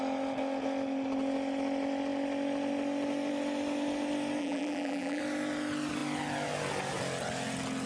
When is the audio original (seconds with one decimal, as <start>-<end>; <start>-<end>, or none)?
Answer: 0.0-4.4; 5.2-7.9